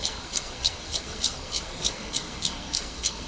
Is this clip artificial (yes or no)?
yes